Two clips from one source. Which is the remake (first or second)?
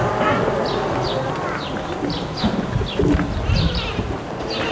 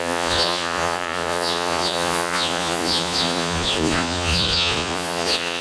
second